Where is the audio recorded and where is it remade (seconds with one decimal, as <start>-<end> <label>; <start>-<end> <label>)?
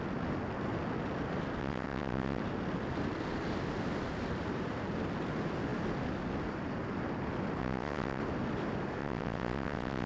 0.0-1.6 recorded; 1.6-2.4 remade; 2.4-7.6 recorded; 7.6-8.2 remade; 8.2-9.0 recorded; 9.0-10.1 remade